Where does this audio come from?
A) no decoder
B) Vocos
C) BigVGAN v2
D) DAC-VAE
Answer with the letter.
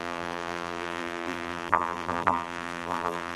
C